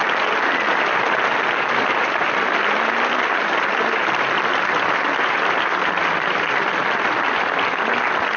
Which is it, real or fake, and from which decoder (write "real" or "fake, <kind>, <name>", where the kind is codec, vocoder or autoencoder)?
real